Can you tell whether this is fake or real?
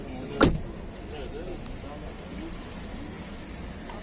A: real